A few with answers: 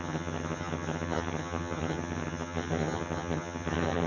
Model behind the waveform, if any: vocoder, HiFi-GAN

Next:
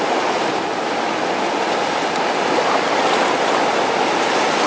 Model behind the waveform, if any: none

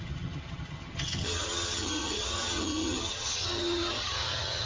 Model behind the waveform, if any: vocoder, HiFi-GAN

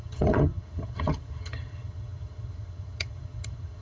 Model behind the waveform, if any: vocoder, HiFi-GAN